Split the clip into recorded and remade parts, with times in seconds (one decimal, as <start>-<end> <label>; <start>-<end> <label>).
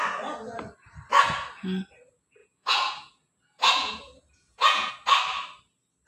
0.0-2.4 recorded; 2.4-4.9 remade; 4.9-6.1 recorded